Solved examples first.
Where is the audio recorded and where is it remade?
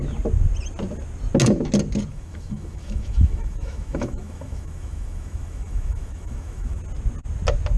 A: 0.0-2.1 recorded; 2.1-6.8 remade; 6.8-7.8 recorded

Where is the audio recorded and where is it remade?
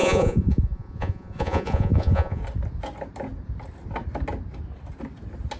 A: 0.0-2.4 remade; 2.4-5.6 recorded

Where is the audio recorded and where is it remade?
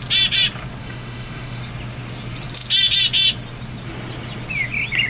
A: 0.0-0.8 recorded; 0.8-1.6 remade; 1.6-5.1 recorded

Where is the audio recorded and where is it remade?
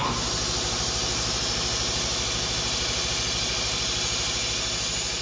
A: 0.0-5.2 recorded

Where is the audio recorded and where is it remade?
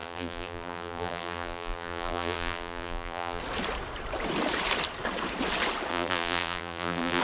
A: 0.0-3.4 remade; 3.4-5.9 recorded; 5.9-7.2 remade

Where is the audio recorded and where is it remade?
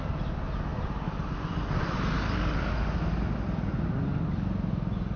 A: 0.0-5.2 recorded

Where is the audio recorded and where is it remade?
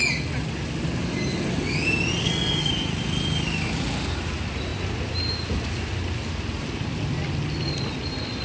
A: 0.0-2.2 recorded; 2.2-2.7 remade; 2.7-8.4 recorded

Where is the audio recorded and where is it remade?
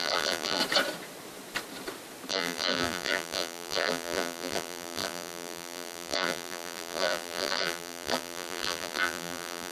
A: 0.0-0.6 remade; 0.6-2.3 recorded; 2.3-9.7 remade